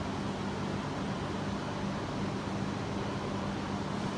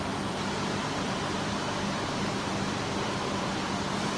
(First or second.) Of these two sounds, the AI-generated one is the second